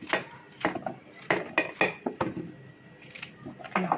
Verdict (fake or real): real